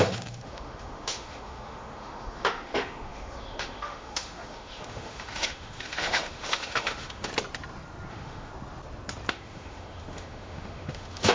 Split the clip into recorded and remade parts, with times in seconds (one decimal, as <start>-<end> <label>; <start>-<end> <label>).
0.0-7.3 remade; 7.3-8.1 recorded; 8.1-8.5 remade; 8.5-9.3 recorded; 9.3-11.3 remade

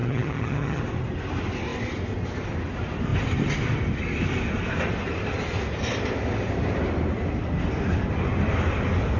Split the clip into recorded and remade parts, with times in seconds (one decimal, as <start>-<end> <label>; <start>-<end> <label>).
0.0-0.8 remade; 0.8-9.2 recorded

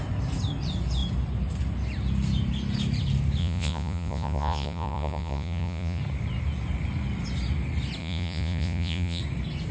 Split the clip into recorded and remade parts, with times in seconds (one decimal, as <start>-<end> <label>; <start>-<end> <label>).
0.0-3.4 recorded; 3.4-6.0 remade; 6.0-8.0 recorded; 8.0-9.2 remade; 9.2-9.7 recorded

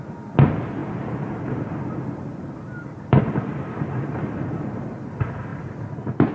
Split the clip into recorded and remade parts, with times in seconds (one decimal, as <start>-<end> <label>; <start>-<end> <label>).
0.0-6.3 recorded